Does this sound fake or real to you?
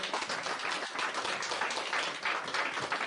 real